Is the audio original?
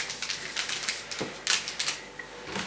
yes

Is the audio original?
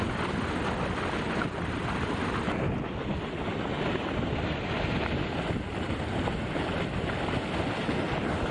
yes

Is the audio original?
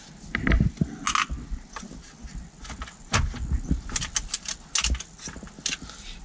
yes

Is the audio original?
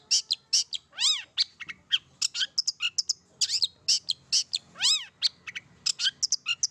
yes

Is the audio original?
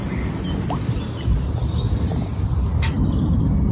yes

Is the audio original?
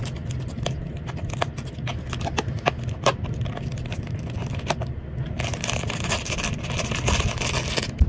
yes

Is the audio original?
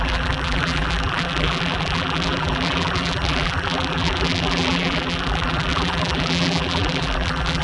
no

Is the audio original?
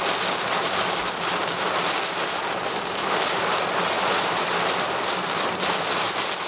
yes